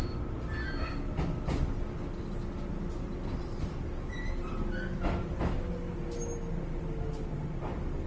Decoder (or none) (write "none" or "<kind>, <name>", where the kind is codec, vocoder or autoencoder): none